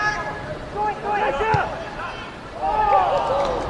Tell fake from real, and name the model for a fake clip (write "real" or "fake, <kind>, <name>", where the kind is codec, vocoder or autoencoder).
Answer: real